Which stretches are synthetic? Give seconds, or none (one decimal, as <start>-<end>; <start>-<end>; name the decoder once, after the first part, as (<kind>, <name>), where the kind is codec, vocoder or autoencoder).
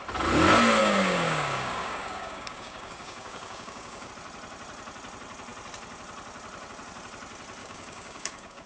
0.8-4.1 (codec, DAC); 7.6-8.7